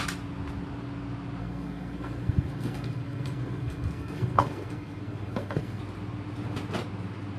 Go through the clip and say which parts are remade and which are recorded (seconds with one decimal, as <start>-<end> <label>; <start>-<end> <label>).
0.0-1.4 recorded; 1.4-5.8 remade; 5.8-7.4 recorded